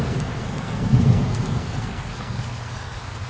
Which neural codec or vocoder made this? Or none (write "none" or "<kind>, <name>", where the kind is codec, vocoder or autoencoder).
codec, SNAC